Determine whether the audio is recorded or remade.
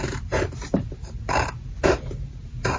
remade